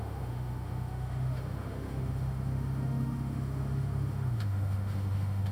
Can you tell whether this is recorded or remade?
remade